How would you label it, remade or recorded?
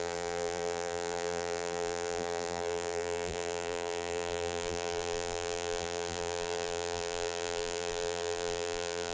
remade